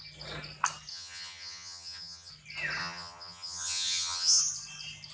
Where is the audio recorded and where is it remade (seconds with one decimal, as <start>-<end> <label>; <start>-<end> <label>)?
0.0-0.9 recorded; 0.9-2.3 remade; 2.3-2.8 recorded; 2.8-4.4 remade; 4.4-5.1 recorded